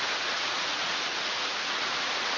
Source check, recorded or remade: remade